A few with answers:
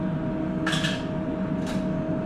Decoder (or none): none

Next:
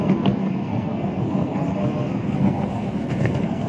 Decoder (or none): codec, SNAC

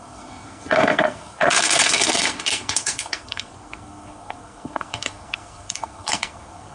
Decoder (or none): codec, SNAC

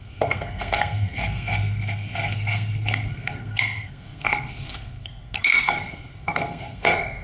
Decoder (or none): codec, SNAC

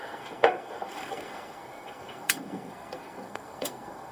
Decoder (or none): codec, SNAC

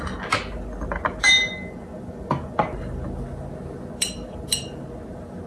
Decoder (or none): none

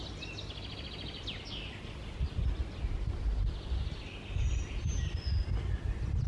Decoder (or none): none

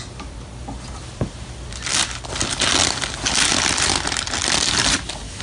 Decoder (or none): none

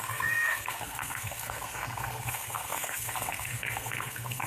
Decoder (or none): codec, SNAC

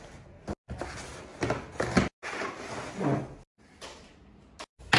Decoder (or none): none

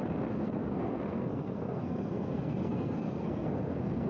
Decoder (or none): codec, SNAC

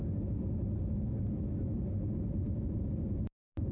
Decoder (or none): none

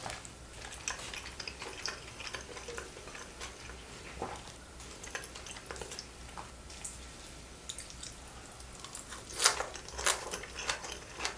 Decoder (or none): none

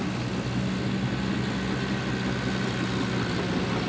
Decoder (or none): none